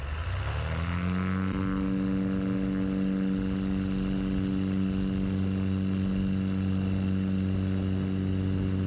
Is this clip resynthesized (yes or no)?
no